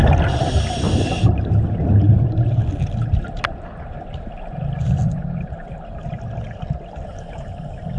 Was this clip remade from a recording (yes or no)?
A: no